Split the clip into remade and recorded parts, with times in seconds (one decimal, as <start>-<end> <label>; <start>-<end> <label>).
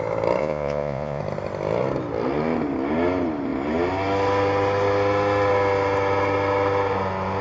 0.0-0.4 recorded; 0.4-1.2 remade; 1.2-7.4 recorded